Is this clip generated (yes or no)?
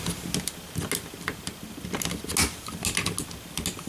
no